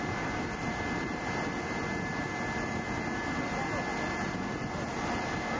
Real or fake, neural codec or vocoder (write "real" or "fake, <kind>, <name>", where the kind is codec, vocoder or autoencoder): real